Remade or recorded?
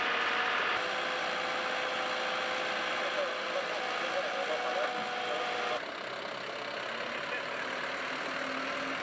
recorded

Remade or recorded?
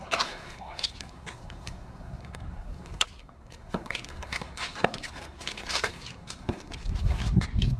remade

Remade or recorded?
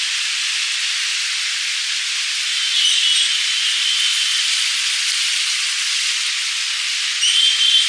recorded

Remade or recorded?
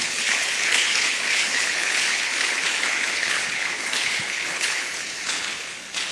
remade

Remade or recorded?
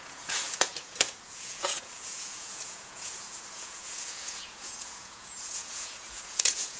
remade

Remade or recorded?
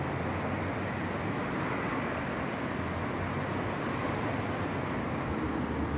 recorded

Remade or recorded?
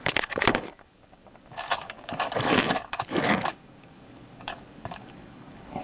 remade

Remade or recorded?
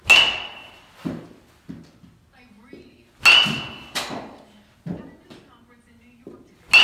recorded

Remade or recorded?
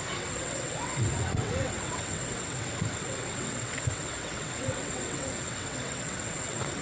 remade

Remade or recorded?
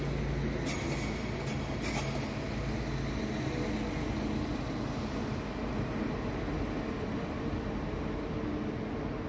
recorded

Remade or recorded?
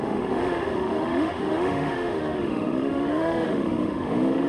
remade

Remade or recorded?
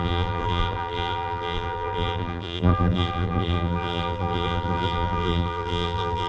remade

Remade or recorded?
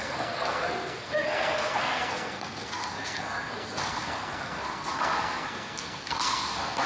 remade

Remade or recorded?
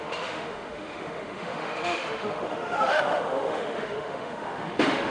remade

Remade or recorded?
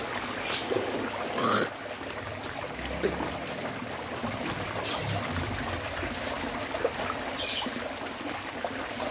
recorded